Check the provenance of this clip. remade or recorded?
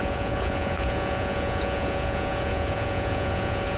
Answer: remade